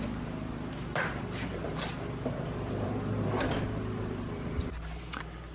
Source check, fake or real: fake